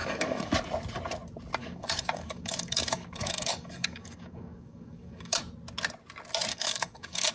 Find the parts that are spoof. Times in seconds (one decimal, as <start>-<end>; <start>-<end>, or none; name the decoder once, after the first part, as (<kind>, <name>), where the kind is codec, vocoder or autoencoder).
0.0-0.5 (codec, DAC); 1.6-5.4; 6.5-7.3